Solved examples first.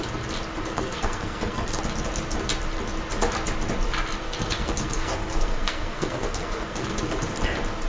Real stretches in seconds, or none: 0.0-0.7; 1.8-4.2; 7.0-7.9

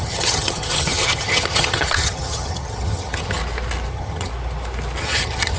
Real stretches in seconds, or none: 3.4-3.9; 4.3-5.0